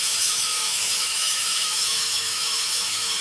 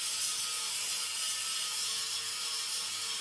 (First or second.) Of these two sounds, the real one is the second